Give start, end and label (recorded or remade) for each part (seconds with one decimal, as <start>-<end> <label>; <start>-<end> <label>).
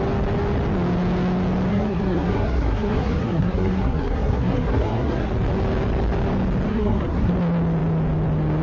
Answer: 0.0-1.7 recorded; 1.7-5.3 remade; 5.3-6.7 recorded; 6.7-7.3 remade; 7.3-8.6 recorded